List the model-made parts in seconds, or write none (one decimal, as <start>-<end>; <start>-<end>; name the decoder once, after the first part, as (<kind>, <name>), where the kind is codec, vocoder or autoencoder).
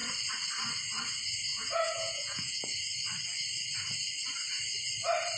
1.5-2.6 (vocoder, Vocos)